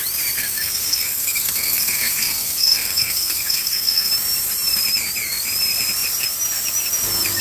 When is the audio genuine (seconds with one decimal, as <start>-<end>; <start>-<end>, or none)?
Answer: 0.0-0.4; 4.1-7.4